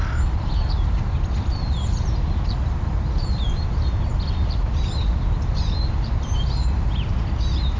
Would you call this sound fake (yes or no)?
no